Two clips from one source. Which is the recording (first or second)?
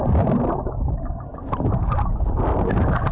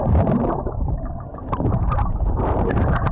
first